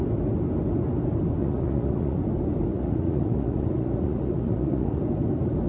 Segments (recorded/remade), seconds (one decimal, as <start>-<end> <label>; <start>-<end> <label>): 0.0-1.4 recorded; 1.4-2.2 remade; 2.2-2.7 recorded; 2.7-5.0 remade; 5.0-5.7 recorded